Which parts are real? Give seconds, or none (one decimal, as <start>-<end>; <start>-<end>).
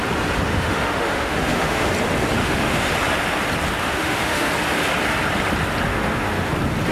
0.0-0.5; 1.9-2.4; 2.9-3.8; 4.5-5.9; 6.5-6.9